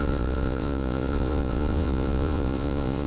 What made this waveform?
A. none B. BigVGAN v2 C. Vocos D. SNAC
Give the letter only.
C